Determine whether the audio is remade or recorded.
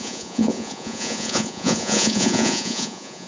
remade